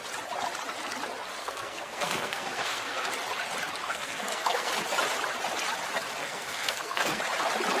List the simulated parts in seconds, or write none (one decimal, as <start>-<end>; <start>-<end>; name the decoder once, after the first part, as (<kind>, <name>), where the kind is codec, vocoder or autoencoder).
1.4-3.1 (codec, SNAC); 3.8-4.7; 6.2-7.2